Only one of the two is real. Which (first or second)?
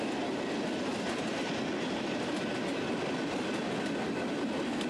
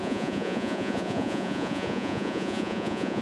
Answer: first